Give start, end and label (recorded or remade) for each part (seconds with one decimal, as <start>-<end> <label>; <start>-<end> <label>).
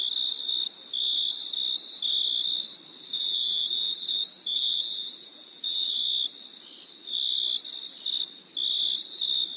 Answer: 0.0-3.1 recorded; 3.1-5.9 remade; 5.9-9.6 recorded